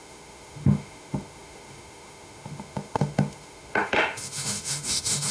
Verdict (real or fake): fake